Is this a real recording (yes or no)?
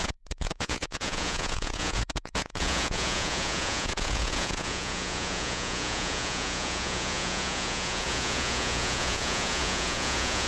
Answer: no